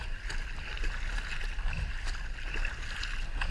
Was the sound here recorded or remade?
recorded